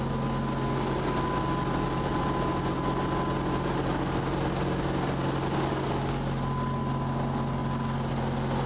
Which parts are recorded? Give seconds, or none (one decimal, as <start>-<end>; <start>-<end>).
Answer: 0.0-8.7

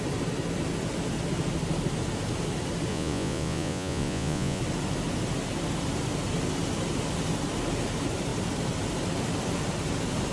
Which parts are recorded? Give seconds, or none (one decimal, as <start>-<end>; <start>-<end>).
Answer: 0.0-2.9; 4.6-10.3

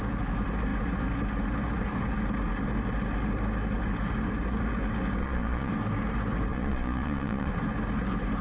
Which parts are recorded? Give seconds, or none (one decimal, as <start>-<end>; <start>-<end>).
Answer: 0.0-5.2; 5.7-6.5; 7.5-8.4

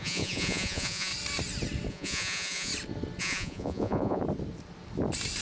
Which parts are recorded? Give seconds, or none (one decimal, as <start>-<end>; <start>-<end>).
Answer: 1.1-1.9; 2.7-3.2; 4.2-5.4

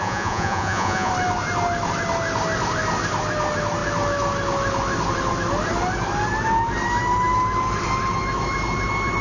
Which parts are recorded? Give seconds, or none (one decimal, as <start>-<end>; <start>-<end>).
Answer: 1.1-9.2

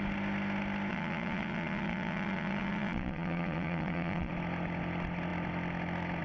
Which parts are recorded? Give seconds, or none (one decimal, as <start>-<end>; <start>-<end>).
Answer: 0.0-0.9; 4.3-6.2

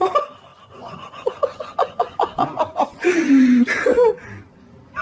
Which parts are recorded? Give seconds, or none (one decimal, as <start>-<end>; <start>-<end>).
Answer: 0.0-0.5; 3.5-5.0

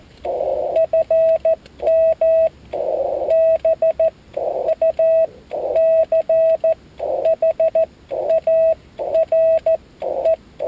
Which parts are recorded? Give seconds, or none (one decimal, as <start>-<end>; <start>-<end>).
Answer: 0.0-10.7